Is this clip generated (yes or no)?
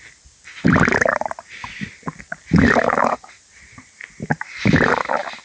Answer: no